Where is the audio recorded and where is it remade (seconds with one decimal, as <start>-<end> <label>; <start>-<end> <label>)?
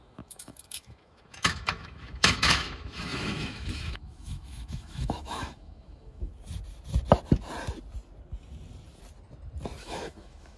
0.0-6.3 remade; 6.3-9.8 recorded; 9.8-10.6 remade